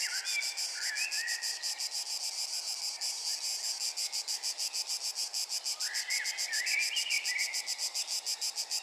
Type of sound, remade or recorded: recorded